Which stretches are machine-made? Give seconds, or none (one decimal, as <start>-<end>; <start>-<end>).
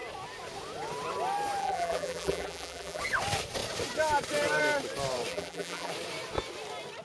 1.6-3.0; 5.3-5.9